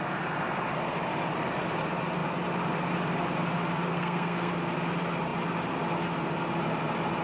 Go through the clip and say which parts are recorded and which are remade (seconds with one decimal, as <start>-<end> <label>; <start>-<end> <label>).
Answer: 0.0-3.9 recorded; 3.9-4.5 remade; 4.5-7.2 recorded